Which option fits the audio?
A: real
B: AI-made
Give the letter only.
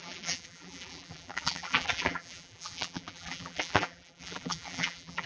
B